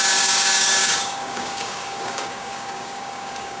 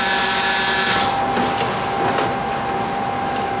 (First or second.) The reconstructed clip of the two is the first